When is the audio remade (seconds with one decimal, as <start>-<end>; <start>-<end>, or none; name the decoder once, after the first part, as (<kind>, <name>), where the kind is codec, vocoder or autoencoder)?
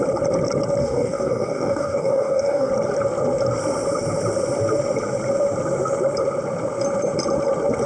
0.8-2.7 (codec, DAC)